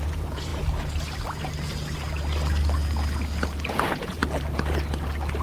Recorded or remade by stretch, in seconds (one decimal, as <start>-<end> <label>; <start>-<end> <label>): 0.0-0.5 remade; 0.5-3.7 recorded; 3.7-4.2 remade; 4.2-5.4 recorded